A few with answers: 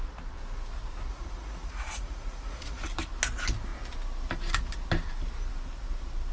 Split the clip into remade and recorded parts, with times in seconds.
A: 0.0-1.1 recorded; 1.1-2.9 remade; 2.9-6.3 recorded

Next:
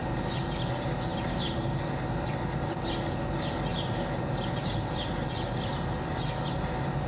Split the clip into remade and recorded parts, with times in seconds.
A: 0.0-7.1 recorded

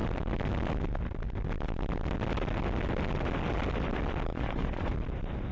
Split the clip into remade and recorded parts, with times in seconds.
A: 0.0-4.3 recorded; 4.3-4.9 remade; 4.9-5.5 recorded

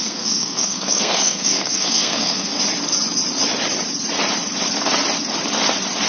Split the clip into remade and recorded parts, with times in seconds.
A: 0.0-2.5 remade; 2.5-6.1 recorded

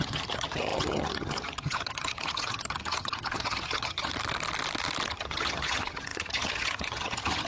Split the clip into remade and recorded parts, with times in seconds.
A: 0.0-4.1 remade; 4.1-5.1 recorded; 5.1-7.5 remade